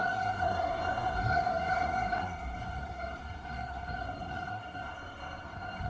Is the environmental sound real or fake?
fake